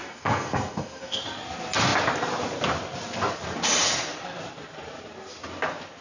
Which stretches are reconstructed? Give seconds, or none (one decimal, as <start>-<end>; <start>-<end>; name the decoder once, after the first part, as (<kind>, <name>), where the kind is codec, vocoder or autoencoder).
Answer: 0.0-1.2 (codec, SNAC)